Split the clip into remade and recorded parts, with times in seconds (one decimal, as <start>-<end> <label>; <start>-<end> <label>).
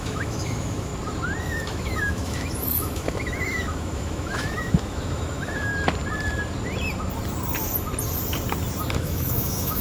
0.0-0.9 remade; 0.9-1.4 recorded; 1.4-5.7 remade; 5.7-8.9 recorded; 8.9-9.8 remade